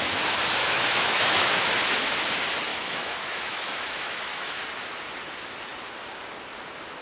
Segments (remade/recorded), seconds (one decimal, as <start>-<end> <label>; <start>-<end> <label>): 0.0-0.6 recorded; 0.6-1.7 remade; 1.7-2.7 recorded; 2.7-4.6 remade; 4.6-7.0 recorded